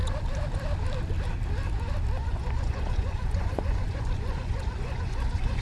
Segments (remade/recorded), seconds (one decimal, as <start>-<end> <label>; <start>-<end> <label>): 0.0-2.2 recorded; 2.2-5.6 remade